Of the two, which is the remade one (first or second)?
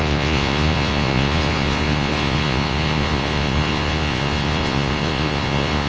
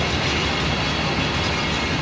first